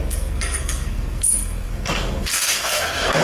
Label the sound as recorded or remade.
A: remade